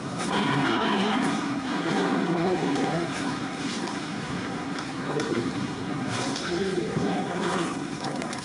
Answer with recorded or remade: remade